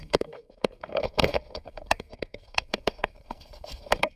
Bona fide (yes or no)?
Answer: no